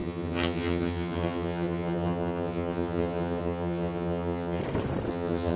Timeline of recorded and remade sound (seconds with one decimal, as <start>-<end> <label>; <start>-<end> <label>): 0.0-4.6 remade; 4.6-5.1 recorded; 5.1-5.6 remade